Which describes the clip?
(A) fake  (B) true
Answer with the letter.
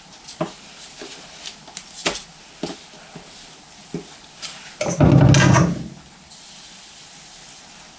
B